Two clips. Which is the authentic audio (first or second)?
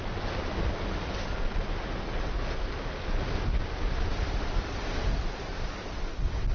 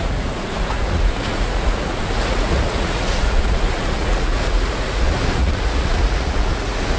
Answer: first